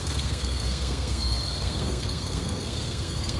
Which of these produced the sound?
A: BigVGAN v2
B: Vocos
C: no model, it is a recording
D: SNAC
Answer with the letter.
D